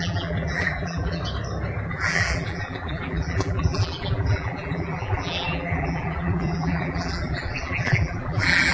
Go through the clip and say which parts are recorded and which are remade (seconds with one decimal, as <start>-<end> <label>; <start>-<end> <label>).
0.0-1.2 remade; 1.2-1.9 recorded; 1.9-8.7 remade